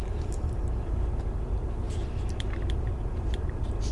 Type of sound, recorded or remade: remade